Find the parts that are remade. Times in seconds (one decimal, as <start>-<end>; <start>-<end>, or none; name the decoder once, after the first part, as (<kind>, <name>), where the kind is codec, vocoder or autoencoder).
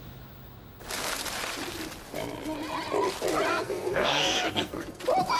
3.5-5.0 (codec, SNAC)